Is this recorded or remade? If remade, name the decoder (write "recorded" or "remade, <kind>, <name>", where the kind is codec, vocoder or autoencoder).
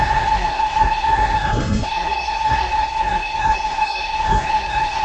remade, codec, SNAC